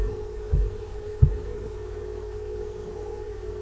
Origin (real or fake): fake